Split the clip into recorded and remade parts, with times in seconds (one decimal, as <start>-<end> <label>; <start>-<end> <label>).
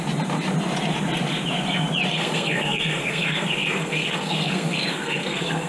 0.0-2.1 recorded; 2.1-5.7 remade